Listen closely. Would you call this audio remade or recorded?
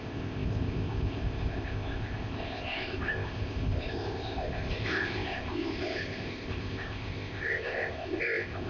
remade